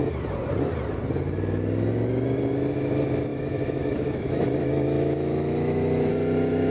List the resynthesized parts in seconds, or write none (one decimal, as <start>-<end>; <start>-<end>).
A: 3.3-6.1